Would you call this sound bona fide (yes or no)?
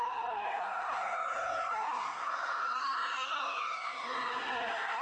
no